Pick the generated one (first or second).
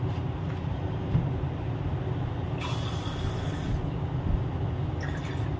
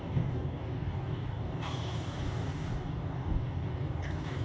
second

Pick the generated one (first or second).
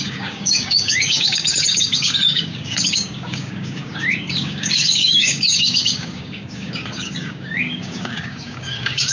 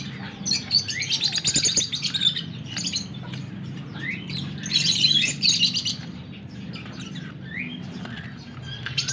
first